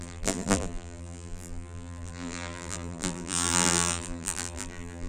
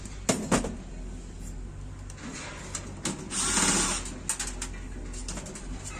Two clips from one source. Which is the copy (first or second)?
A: first